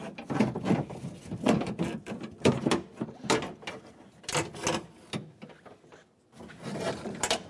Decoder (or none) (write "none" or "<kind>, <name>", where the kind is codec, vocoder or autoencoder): none